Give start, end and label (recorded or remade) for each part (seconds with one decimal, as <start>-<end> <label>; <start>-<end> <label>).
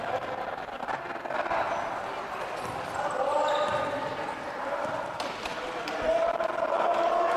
0.0-7.4 recorded